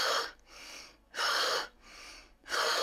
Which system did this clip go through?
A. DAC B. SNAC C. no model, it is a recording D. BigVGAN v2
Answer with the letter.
A